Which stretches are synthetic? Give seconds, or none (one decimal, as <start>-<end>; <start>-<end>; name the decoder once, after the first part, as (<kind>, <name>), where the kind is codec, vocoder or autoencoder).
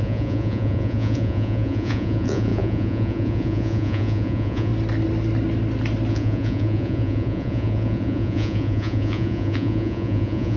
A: 0.0-4.7 (vocoder, Vocos); 6.1-10.6